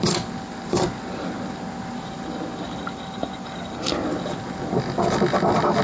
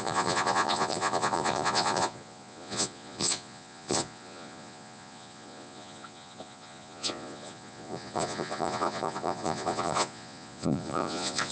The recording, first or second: first